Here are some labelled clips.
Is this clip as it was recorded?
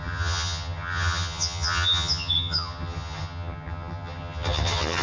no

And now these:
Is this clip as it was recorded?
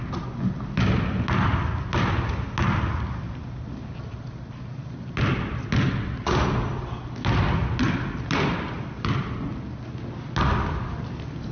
yes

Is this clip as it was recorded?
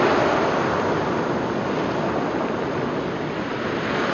yes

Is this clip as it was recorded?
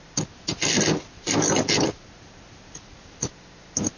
yes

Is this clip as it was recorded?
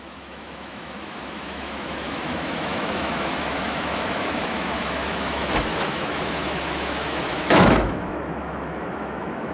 no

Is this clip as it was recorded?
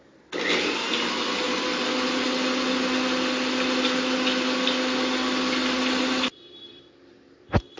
yes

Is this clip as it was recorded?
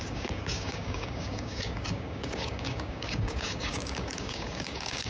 no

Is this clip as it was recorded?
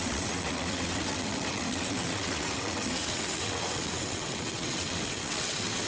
no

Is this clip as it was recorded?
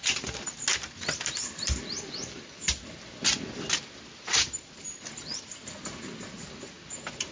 yes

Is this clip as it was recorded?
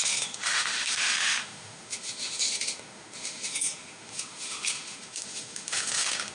no